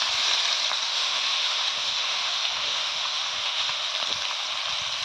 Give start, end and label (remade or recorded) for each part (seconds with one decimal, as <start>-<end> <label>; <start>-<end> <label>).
0.0-0.9 recorded; 0.9-3.9 remade; 3.9-5.0 recorded